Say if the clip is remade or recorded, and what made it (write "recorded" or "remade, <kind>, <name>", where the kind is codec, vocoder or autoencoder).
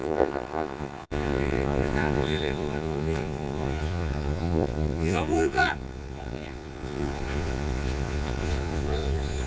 remade, vocoder, Vocos